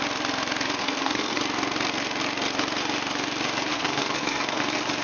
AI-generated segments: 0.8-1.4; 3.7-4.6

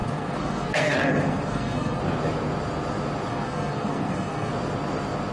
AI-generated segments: 0.0-2.0; 3.3-4.5

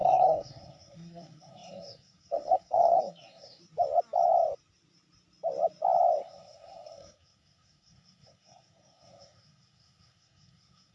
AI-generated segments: 0.0-3.6; 6.2-10.9

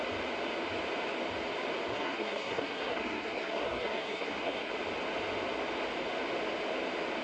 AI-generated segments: 1.9-4.7